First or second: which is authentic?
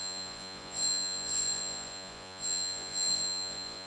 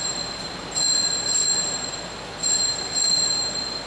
second